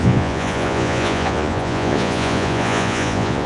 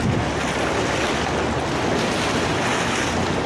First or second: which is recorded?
second